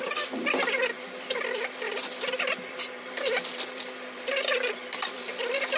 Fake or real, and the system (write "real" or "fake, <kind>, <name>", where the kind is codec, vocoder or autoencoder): fake, vocoder, BigVGAN v2